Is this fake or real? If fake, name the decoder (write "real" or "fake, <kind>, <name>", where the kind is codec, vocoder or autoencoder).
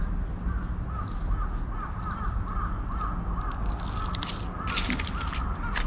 real